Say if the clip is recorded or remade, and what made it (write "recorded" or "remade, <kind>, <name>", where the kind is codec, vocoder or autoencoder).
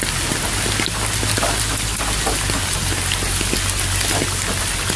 recorded